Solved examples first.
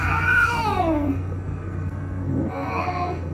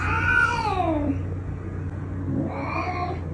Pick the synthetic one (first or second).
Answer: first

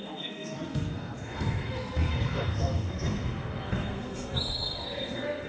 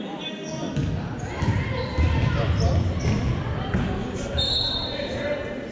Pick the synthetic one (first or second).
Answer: first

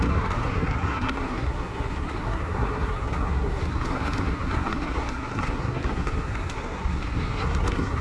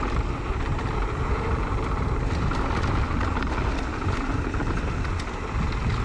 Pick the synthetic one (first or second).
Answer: first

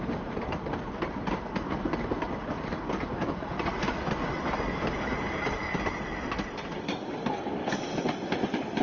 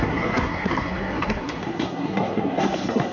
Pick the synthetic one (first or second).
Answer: second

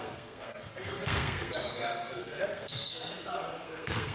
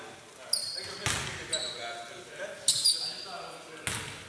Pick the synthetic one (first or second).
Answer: first